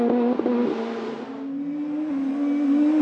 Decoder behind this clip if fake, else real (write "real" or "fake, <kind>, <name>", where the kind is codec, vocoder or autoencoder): real